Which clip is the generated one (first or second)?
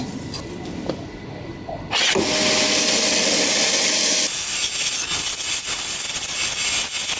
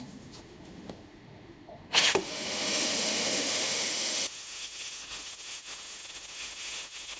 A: second